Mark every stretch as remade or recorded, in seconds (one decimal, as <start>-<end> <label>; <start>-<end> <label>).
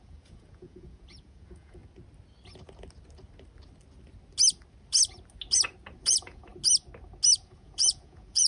0.0-1.8 remade; 1.8-6.0 recorded; 6.0-6.5 remade; 6.5-7.4 recorded; 7.4-8.5 remade